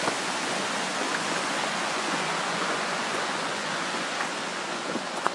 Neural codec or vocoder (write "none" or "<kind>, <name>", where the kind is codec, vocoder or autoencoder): vocoder, Vocos